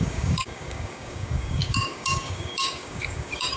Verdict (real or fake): fake